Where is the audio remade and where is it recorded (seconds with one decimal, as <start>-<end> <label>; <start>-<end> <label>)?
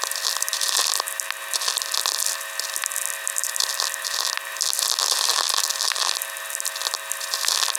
0.0-3.4 recorded; 3.4-4.3 remade; 4.3-5.3 recorded; 5.3-6.0 remade; 6.0-7.8 recorded